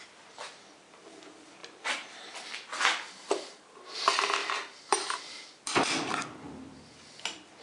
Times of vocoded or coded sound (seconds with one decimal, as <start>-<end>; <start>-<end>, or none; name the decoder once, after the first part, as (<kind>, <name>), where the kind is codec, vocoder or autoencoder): 1.6-2.3 (vocoder, BigVGAN v2); 4.4-6.9